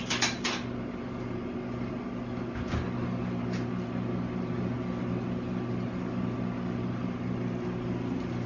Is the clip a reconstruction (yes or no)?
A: no